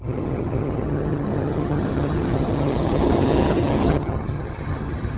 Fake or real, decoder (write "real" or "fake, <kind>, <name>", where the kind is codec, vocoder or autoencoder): fake, vocoder, HiFi-GAN